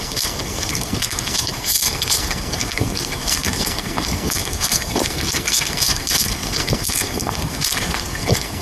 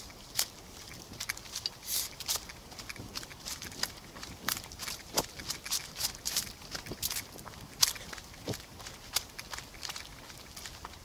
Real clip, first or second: second